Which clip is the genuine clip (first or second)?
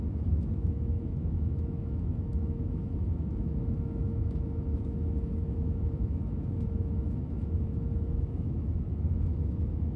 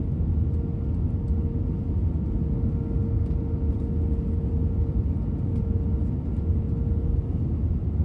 second